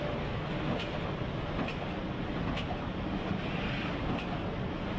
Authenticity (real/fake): real